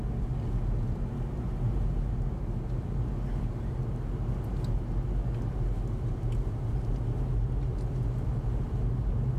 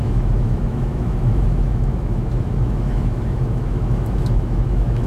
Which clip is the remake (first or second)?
second